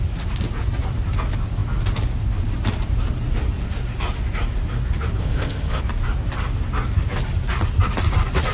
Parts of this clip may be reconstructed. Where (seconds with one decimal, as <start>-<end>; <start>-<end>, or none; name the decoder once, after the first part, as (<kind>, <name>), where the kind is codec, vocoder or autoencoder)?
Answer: 5.2-5.8 (codec, ZipCodec)